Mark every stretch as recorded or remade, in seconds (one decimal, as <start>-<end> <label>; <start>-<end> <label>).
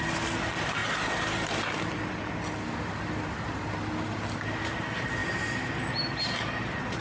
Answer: 0.0-7.0 recorded